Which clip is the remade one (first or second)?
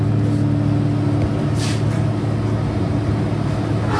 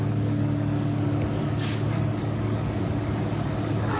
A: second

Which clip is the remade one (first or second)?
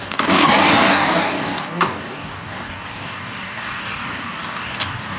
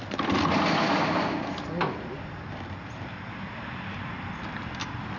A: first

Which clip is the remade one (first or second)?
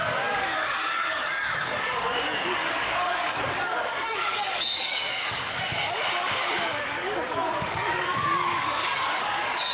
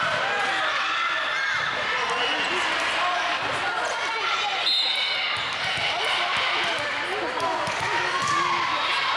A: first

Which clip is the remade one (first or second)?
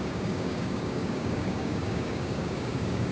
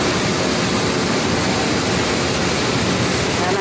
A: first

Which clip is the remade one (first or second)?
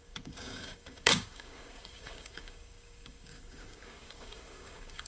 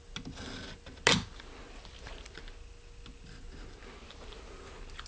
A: first